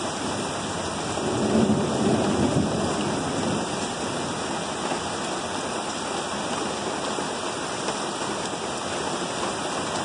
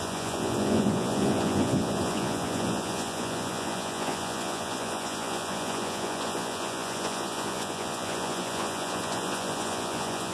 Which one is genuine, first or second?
first